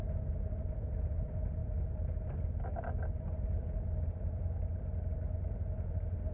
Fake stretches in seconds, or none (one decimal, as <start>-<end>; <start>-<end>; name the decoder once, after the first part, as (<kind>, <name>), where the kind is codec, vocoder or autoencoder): none